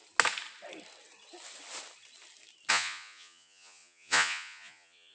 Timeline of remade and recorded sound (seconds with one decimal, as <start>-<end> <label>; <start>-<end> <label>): 0.0-2.7 recorded; 2.7-5.1 remade